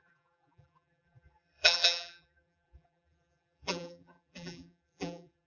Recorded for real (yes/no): no